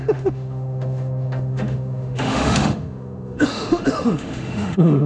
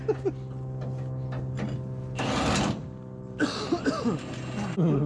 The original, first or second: second